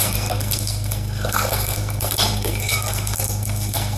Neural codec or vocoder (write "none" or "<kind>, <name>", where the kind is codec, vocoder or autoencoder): codec, SNAC